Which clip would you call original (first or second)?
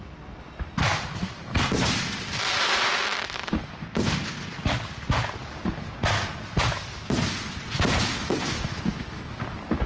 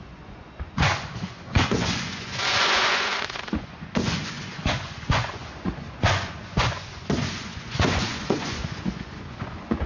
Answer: first